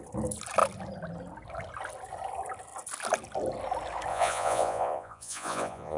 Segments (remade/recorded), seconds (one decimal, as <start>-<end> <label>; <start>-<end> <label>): 0.0-4.1 recorded; 4.1-6.0 remade